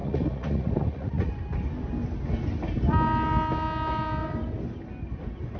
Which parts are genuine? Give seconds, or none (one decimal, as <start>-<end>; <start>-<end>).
1.3-5.6